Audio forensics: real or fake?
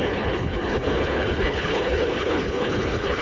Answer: fake